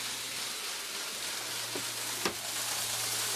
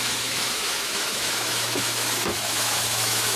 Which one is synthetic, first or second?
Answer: second